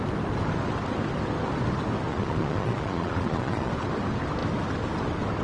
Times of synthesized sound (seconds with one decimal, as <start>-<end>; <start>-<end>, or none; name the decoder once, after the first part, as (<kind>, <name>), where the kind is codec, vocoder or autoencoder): 2.1-3.7 (vocoder, Vocos)